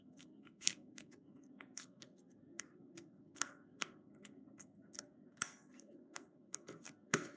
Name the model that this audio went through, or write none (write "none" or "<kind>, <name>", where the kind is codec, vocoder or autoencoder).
codec, SNAC